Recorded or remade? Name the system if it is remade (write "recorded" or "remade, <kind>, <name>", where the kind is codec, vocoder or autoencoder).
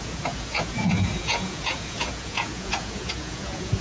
remade, vocoder, Vocos